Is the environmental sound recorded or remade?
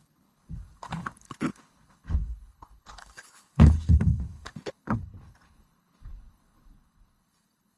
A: remade